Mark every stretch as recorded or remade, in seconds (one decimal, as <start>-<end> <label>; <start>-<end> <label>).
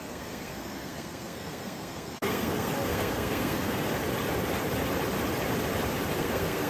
0.0-3.8 remade; 3.8-6.2 recorded; 6.2-6.7 remade